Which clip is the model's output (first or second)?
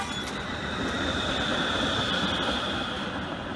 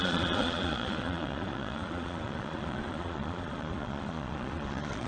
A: second